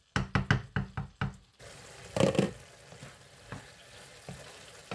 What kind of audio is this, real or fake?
real